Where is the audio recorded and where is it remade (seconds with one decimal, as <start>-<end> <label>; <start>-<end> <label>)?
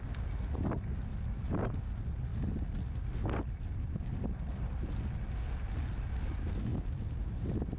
0.0-7.8 recorded